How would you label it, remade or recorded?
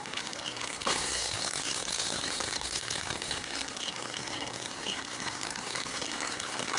remade